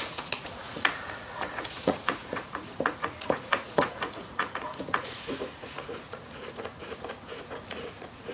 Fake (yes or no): yes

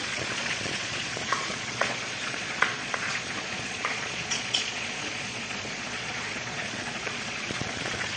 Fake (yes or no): yes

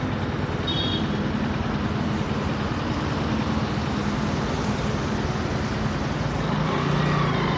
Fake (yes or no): no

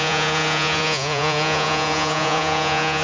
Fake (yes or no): yes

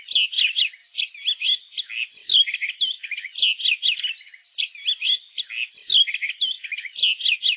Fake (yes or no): no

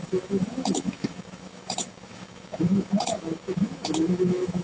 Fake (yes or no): yes